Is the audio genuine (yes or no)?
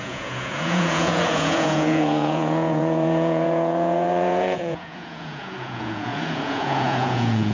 no